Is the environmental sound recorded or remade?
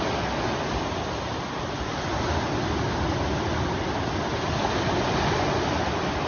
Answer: recorded